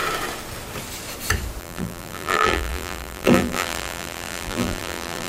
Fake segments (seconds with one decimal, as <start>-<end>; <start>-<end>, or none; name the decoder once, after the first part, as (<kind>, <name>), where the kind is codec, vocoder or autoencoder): 1.6-5.3 (vocoder, BigVGAN v2)